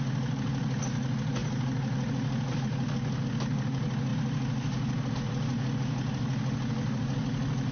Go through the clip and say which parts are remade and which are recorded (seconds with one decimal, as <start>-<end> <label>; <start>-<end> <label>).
0.0-7.7 recorded